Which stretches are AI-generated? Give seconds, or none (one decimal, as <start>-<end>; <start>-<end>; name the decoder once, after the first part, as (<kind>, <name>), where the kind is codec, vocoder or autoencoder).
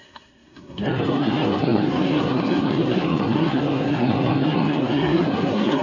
0.0-5.8 (codec, SNAC)